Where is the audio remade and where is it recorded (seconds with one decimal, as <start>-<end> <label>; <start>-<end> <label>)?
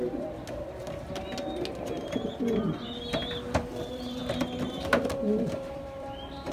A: 0.0-5.2 recorded; 5.2-6.5 remade